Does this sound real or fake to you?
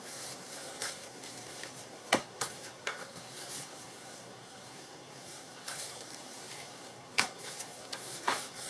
fake